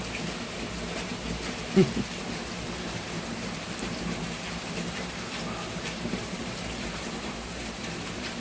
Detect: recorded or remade remade